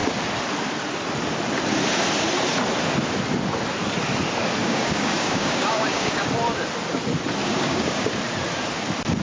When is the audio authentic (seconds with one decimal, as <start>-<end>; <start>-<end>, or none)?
0.0-4.6; 6.3-7.4; 8.1-9.2